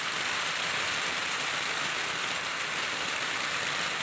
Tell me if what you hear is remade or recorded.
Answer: recorded